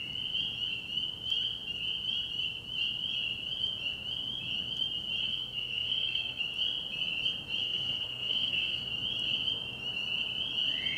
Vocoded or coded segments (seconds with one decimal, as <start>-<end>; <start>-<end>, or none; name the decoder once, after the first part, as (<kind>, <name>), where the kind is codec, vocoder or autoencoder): 5.2-6.4 (codec, SNAC); 7.6-8.9